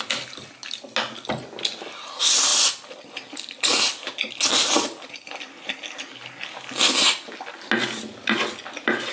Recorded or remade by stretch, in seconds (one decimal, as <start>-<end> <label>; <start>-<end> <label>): 0.0-2.5 recorded; 2.5-3.1 remade; 3.1-4.5 recorded; 4.5-5.7 remade; 5.7-9.1 recorded